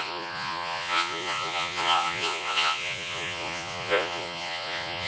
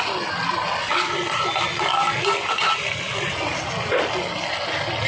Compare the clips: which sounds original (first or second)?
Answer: second